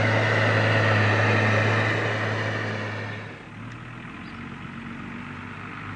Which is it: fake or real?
real